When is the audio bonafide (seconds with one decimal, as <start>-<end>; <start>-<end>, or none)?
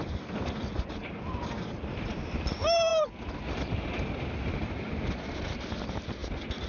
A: 0.0-6.7